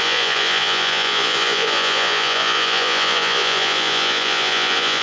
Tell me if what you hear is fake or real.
fake